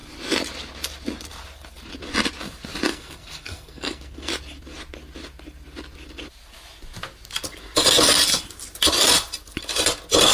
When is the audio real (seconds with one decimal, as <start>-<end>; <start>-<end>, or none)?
0.0-2.9; 4.3-10.3